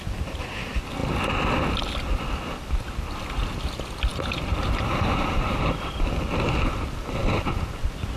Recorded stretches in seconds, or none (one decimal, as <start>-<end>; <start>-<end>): 0.0-4.1; 5.8-8.2